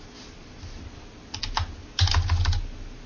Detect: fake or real real